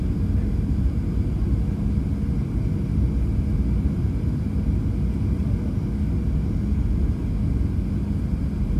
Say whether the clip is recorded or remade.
recorded